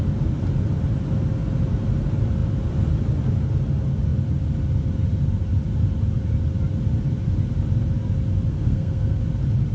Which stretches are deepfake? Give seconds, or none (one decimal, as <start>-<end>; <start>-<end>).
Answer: 8.5-9.2